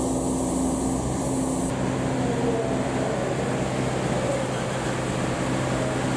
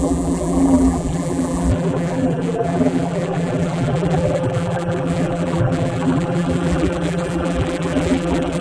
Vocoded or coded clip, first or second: second